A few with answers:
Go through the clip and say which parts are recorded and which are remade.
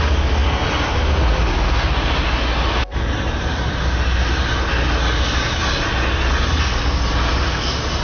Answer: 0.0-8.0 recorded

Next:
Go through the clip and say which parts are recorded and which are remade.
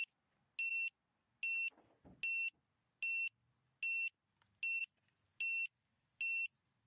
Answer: 0.0-6.9 recorded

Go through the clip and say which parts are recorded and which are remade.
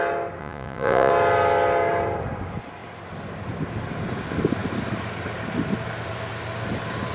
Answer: 0.0-0.4 recorded; 0.4-1.1 remade; 1.1-7.1 recorded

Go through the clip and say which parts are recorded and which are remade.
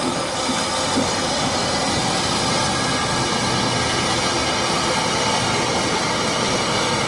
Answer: 0.0-7.1 recorded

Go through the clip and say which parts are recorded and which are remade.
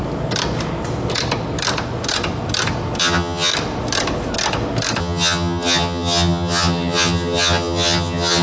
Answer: 0.0-3.0 recorded; 3.0-3.5 remade; 3.5-5.0 recorded; 5.0-8.4 remade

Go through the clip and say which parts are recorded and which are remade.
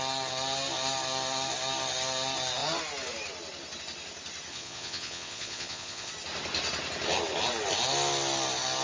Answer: 0.0-4.5 recorded; 4.5-6.1 remade; 6.1-8.8 recorded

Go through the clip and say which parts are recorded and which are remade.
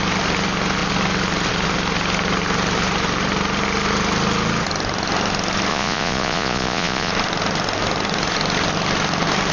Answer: 0.0-5.7 recorded; 5.7-7.1 remade; 7.1-9.5 recorded